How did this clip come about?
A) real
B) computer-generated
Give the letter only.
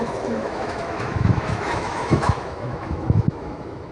B